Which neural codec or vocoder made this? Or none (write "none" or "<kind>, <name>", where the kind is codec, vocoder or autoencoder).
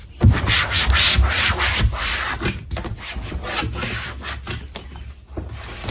none